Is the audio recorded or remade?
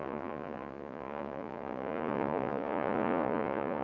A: remade